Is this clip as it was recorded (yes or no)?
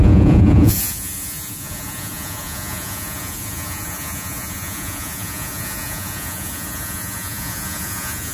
no